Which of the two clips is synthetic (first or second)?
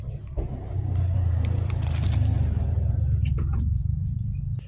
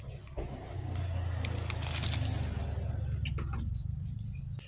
first